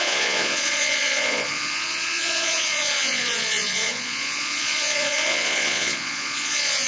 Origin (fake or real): fake